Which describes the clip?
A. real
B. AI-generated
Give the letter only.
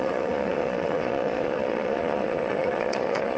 B